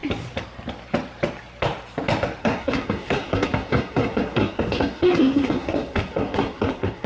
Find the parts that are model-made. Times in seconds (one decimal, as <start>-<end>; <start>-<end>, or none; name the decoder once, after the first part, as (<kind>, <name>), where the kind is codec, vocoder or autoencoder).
2.4-7.1 (codec, SNAC)